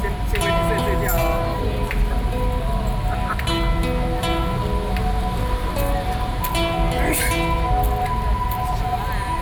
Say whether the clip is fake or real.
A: real